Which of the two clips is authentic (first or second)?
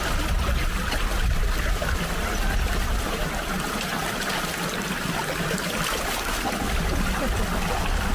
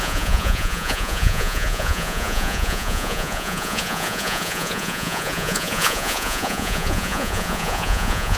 first